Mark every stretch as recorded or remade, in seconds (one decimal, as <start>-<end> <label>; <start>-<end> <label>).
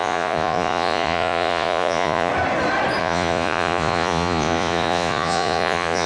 0.0-2.3 remade; 2.3-3.0 recorded; 3.0-6.1 remade